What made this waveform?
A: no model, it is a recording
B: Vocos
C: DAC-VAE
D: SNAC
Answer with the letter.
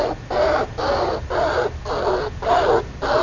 A